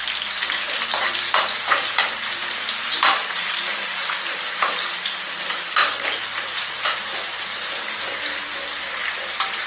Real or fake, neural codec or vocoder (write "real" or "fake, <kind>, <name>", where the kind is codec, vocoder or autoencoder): fake, vocoder, BigVGAN v2